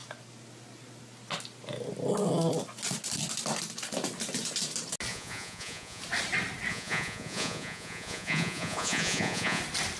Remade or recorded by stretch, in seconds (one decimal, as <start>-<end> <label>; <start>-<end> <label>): 0.0-5.1 recorded; 5.1-6.0 remade; 6.0-6.7 recorded; 6.7-9.6 remade; 9.6-10.0 recorded